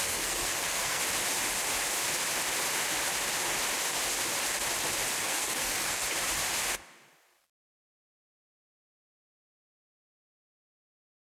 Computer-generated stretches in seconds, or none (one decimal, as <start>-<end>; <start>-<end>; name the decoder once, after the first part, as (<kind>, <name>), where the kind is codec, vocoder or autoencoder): 0.0-1.0 (codec, SNAC); 5.2-6.0; 10.1-11.3